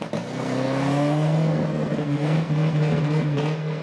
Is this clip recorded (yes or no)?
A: no